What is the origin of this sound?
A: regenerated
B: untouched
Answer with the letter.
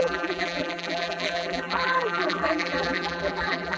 A